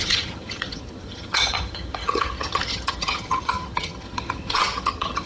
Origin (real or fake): fake